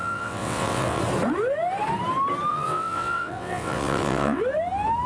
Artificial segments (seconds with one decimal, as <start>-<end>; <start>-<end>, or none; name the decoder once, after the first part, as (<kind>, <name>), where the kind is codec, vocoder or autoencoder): 0.0-1.0 (vocoder, WaveNeXt); 2.5-4.4